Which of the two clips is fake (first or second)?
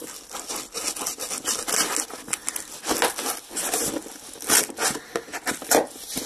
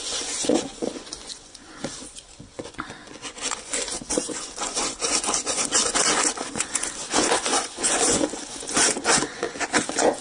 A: second